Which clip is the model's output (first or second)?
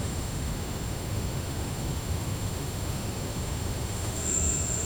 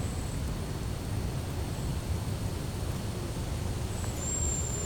first